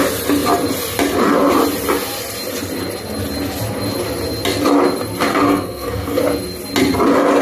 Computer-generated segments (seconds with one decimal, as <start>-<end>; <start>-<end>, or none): 5.3-6.2